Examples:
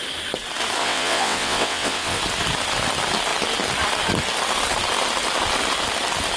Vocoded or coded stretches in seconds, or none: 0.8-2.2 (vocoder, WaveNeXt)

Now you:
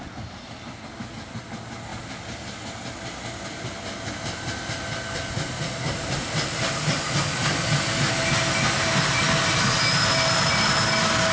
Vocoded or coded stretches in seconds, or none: none

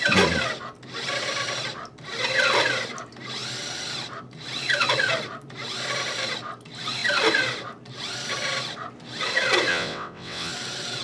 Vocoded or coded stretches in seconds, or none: 9.7-10.5 (vocoder, WaveNeXt)

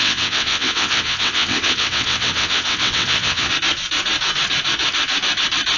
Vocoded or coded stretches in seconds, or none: 0.0-3.5 (vocoder, WaveNeXt)

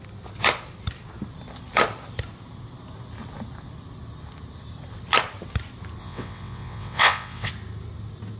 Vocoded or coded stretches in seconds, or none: 6.0-7.5 (vocoder, WaveNeXt)

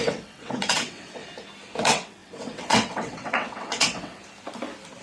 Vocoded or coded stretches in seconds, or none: 0.0-1.2 (vocoder, WaveNeXt); 1.8-4.2

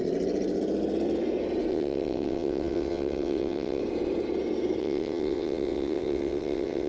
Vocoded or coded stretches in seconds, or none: 1.7-3.8 (vocoder, WaveNeXt); 4.8-6.9

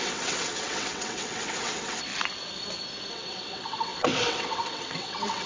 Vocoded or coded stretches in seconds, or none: 0.0-2.1 (vocoder, WaveNeXt); 3.1-5.5